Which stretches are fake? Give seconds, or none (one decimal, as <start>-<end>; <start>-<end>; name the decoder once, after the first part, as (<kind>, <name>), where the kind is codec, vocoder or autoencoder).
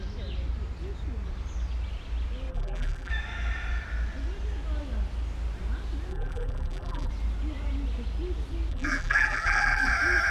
2.5-3.1 (vocoder, BigVGAN v2); 6.1-7.1; 8.7-9.9